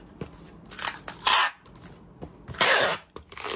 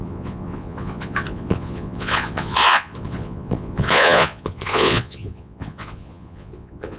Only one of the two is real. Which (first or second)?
first